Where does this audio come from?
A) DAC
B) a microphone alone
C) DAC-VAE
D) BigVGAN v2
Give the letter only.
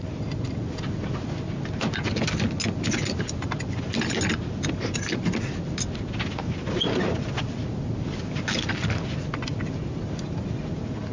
B